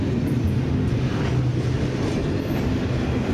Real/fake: real